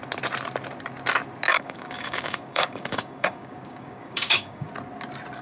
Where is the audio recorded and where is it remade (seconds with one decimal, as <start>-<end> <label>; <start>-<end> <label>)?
0.0-1.5 recorded; 1.5-4.7 remade; 4.7-5.4 recorded